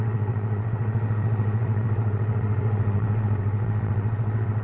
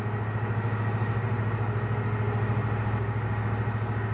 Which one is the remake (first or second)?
first